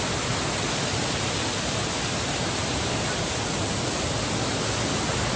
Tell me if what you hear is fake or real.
real